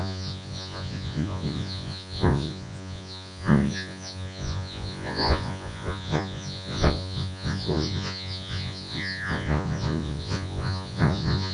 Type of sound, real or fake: fake